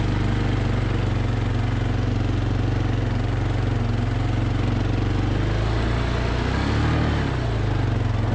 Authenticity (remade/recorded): recorded